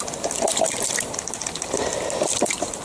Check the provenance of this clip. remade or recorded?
recorded